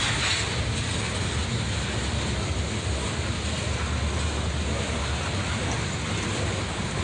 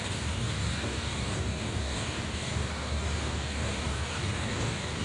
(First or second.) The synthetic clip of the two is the second